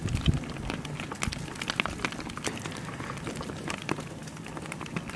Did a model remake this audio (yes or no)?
no